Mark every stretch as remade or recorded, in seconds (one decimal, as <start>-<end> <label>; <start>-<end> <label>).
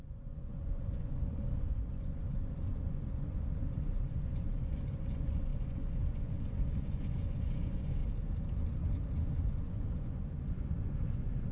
0.0-8.0 remade; 8.0-9.5 recorded; 9.5-11.5 remade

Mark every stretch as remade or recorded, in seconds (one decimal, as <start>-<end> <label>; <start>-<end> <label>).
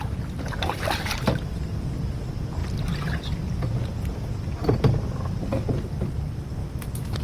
0.0-7.2 recorded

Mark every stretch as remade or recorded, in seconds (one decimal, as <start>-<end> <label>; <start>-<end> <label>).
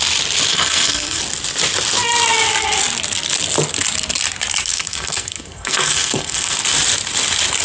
0.0-0.5 recorded; 0.5-1.2 remade; 1.2-4.7 recorded; 4.7-6.6 remade; 6.6-7.6 recorded